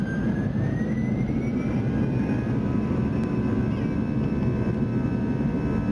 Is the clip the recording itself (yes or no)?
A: yes